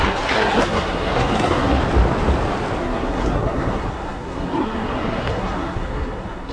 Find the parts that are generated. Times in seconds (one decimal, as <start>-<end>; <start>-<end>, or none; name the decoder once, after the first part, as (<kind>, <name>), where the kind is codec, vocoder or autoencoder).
0.0-1.8 (codec, SNAC); 2.8-6.5

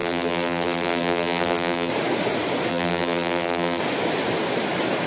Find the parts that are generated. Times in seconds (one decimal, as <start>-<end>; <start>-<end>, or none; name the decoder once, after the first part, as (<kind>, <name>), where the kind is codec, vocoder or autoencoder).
0.0-1.9 (vocoder, BigVGAN v2); 2.7-3.8